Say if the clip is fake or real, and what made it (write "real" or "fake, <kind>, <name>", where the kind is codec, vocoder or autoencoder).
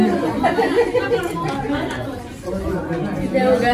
real